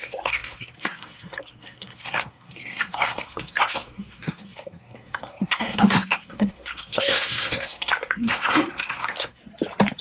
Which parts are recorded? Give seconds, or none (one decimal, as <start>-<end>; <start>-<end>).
9.4-10.0